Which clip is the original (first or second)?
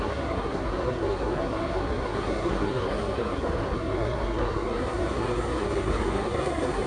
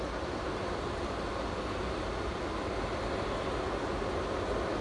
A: second